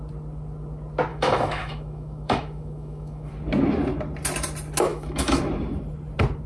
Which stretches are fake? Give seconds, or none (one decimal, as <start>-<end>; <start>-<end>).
1.1-3.3; 4.9-5.4